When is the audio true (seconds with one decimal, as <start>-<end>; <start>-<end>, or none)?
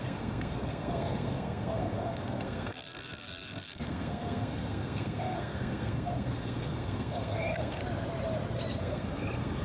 7.8-8.8